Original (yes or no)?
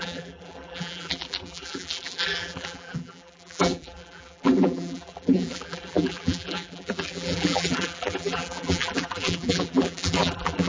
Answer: no